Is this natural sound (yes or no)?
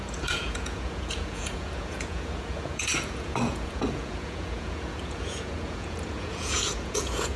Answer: no